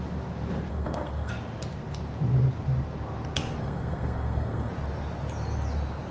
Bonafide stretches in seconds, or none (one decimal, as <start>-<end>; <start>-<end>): 0.0-0.7; 1.3-3.6; 4.7-6.1